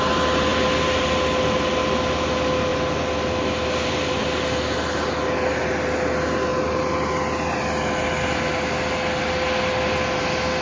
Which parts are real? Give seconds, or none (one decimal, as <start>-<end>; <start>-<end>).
0.0-10.6